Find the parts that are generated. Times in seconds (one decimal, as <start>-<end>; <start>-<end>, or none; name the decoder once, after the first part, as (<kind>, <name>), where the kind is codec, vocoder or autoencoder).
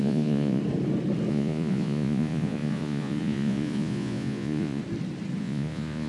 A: 0.0-0.6 (vocoder, Vocos); 1.3-4.8; 5.4-6.1